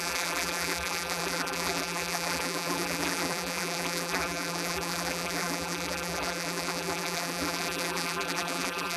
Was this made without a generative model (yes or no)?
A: no